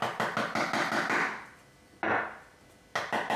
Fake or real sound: real